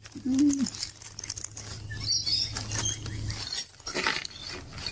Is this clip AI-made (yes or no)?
no